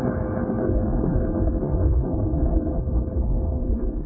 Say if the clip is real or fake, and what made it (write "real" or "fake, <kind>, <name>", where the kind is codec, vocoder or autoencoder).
fake, codec, SNAC